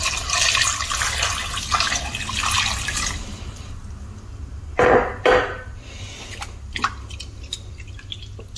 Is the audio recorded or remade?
recorded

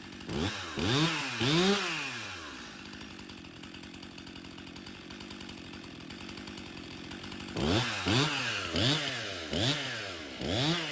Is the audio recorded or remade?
recorded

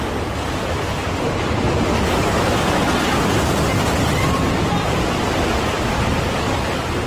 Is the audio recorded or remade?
recorded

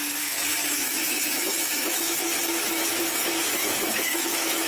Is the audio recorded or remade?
remade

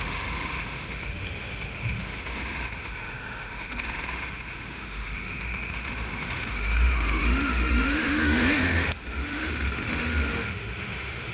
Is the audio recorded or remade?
remade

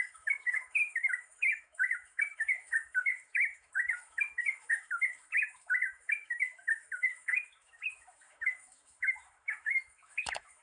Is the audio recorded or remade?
remade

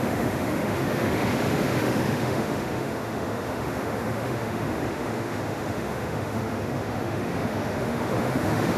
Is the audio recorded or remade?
remade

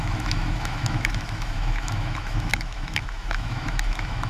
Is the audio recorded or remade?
remade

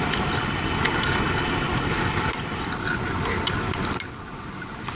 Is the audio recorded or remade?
recorded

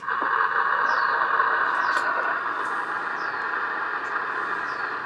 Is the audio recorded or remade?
recorded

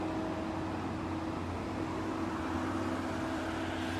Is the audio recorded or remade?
recorded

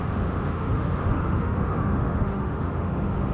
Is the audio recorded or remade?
remade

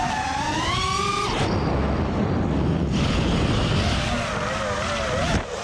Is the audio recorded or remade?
recorded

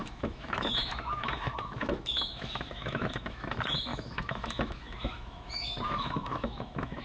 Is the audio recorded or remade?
remade